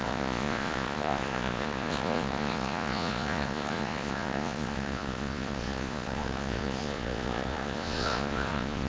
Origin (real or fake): fake